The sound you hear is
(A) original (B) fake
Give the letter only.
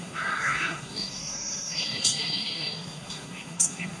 B